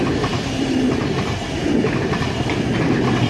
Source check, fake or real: real